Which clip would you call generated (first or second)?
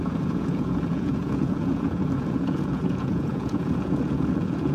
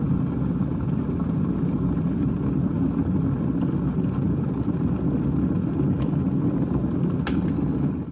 first